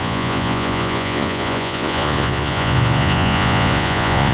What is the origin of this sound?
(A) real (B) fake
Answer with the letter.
B